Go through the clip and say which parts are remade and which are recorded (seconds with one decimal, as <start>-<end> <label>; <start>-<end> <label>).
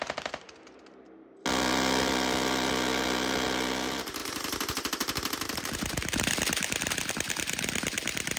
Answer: 0.0-8.4 recorded